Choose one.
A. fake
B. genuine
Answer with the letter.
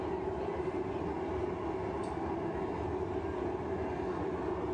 B